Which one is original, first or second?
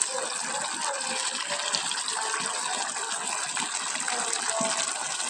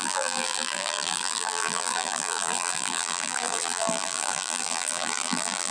first